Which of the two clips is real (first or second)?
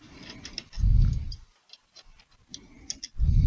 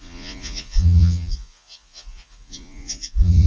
first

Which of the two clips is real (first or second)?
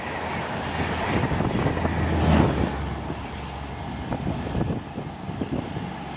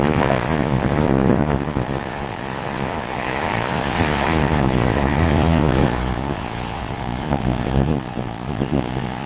first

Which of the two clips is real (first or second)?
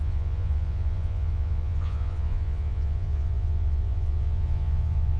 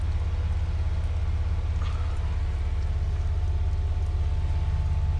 second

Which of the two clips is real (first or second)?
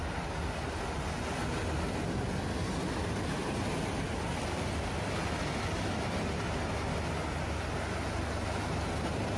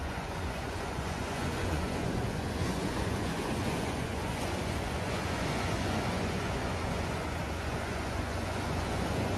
first